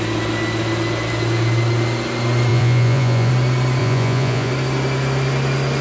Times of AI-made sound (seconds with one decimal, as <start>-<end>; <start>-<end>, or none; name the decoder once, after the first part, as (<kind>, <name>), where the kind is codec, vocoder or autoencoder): 2.5-3.3 (vocoder, Vocos); 3.8-4.5